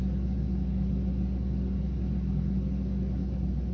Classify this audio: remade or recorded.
recorded